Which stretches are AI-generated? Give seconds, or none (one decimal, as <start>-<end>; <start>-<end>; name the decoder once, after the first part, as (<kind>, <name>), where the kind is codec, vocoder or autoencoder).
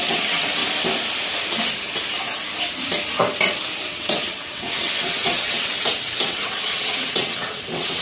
0.0-0.6 (vocoder, WaveNeXt); 3.9-8.0